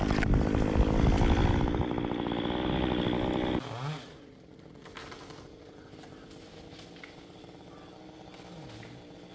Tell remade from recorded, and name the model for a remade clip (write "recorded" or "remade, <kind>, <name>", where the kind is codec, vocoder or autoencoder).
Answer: recorded